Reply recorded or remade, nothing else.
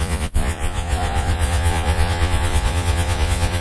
remade